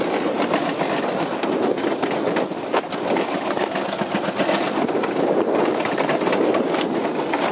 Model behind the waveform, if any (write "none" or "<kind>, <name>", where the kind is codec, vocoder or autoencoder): none